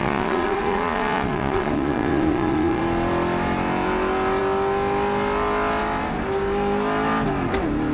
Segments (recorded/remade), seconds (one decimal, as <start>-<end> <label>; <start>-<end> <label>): 0.0-2.8 remade; 2.8-7.9 recorded